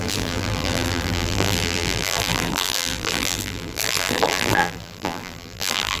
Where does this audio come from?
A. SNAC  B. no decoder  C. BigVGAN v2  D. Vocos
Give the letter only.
C